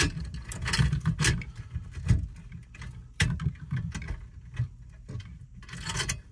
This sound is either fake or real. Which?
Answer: real